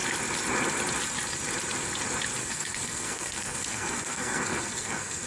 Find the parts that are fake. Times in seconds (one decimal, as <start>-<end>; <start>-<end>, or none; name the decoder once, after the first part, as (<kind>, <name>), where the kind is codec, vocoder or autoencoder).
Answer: 2.4-5.3 (codec, SNAC)